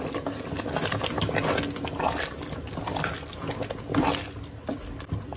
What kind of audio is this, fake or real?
real